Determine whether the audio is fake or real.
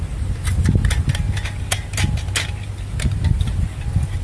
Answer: real